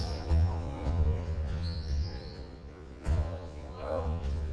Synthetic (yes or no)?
yes